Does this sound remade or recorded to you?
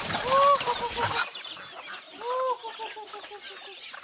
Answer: recorded